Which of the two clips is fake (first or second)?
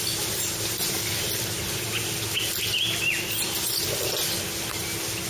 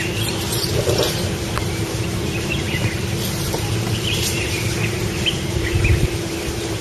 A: second